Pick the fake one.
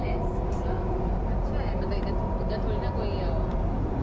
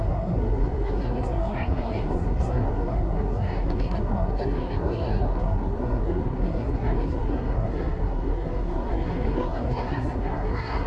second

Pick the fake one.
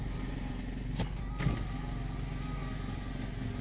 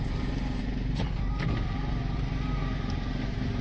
second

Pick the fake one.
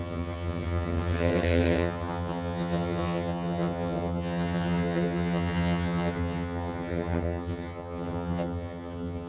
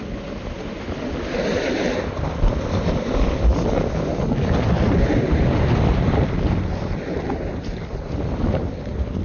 first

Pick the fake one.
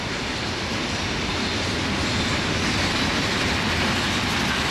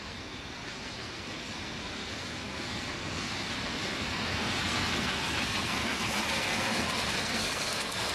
second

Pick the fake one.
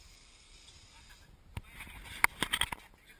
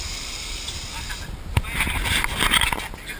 second